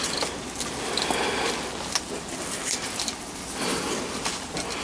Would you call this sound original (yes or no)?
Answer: yes